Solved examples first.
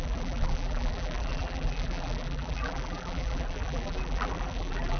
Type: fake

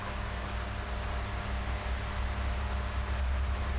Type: real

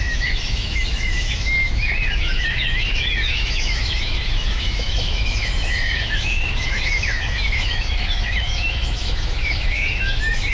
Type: fake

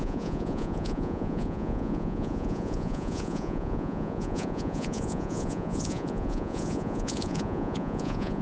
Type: fake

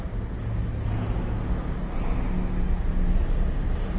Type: real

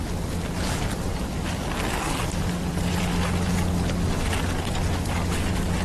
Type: real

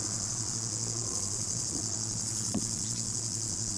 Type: fake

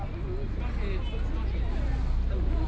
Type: real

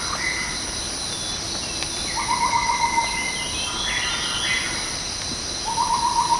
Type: real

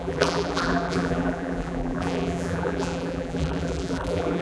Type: fake